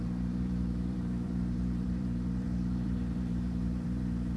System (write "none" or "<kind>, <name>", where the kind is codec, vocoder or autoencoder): vocoder, BigVGAN v2